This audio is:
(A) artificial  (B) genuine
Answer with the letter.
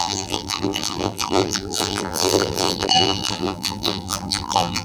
A